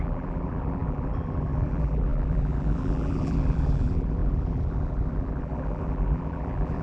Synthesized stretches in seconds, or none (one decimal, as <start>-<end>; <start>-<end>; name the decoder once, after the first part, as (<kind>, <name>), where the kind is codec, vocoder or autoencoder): 0.0-6.8 (vocoder, BigVGAN v2)

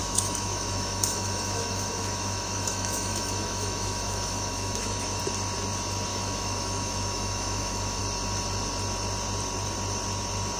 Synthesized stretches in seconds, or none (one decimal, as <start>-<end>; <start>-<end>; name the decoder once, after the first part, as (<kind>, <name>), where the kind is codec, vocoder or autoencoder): 0.0-5.2 (autoencoder, DAC-VAE); 6.1-8.0

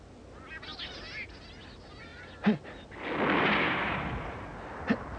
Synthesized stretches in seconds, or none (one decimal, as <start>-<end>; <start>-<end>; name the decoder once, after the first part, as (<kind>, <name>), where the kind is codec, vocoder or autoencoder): none

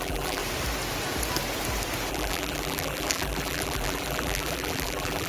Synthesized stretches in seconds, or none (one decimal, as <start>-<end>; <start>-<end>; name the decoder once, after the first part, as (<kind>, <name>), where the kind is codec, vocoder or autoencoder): 0.0-0.4 (vocoder, BigVGAN v2); 2.1-5.3

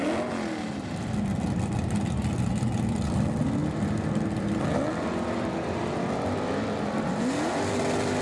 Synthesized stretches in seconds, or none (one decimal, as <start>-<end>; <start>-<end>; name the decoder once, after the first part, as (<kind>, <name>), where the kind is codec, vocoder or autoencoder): none

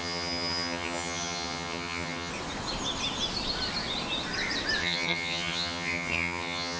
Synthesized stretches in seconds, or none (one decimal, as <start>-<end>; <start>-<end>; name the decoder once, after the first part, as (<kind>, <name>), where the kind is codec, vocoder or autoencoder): 0.0-2.3 (vocoder, HiFi-GAN); 4.8-6.8